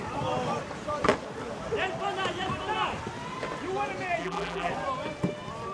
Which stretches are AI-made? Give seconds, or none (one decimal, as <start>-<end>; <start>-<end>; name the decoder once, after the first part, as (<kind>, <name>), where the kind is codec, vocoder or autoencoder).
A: 4.2-4.7 (vocoder, BigVGAN v2)